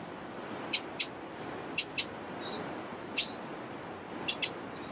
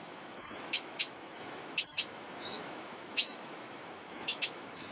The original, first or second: first